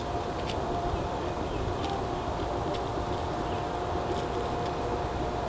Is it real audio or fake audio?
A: real